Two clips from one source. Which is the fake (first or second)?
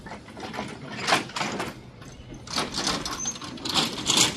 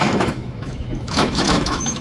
second